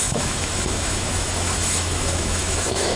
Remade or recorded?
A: remade